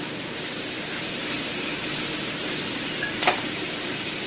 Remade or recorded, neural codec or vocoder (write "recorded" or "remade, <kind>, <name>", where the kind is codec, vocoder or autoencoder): remade, vocoder, BigVGAN v2